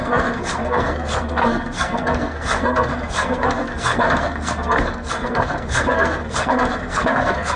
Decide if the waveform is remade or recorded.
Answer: remade